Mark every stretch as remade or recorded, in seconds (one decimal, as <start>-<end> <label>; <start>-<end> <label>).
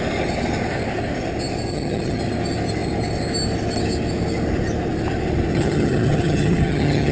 0.0-1.7 recorded; 1.7-2.2 remade; 2.2-5.5 recorded; 5.5-7.1 remade